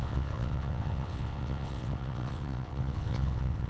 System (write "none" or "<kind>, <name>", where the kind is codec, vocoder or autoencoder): vocoder, WaveNeXt